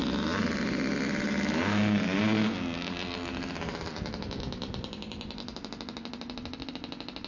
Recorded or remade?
recorded